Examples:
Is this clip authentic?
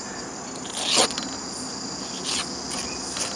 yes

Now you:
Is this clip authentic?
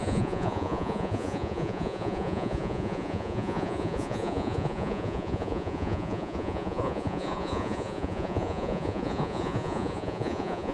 no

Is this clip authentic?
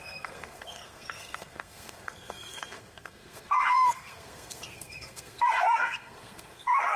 no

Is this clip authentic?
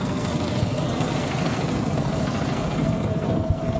no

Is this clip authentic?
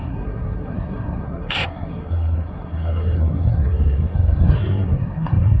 no